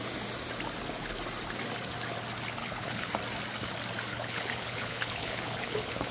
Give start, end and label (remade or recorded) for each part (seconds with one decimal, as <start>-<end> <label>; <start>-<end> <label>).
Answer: 0.0-2.6 recorded; 2.6-3.1 remade; 3.1-4.1 recorded; 4.1-6.1 remade